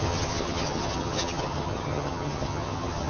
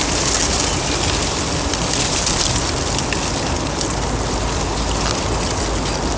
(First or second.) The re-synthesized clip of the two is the first